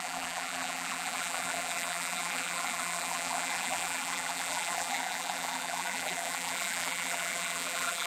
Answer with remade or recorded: remade